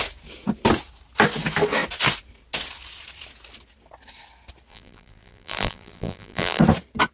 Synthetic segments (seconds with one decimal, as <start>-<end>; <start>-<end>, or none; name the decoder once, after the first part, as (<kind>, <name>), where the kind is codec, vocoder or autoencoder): 4.7-6.6 (vocoder, BigVGAN v2)